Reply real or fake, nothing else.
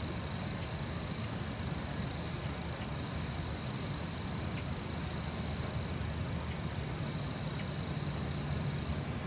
real